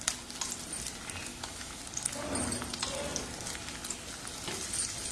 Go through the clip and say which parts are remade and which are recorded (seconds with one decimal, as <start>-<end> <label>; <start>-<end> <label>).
0.0-1.3 recorded; 1.3-1.8 remade; 1.8-5.1 recorded